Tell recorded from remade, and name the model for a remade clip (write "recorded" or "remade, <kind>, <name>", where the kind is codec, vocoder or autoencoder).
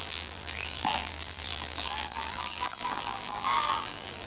remade, vocoder, BigVGAN v2